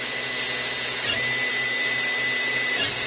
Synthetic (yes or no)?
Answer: no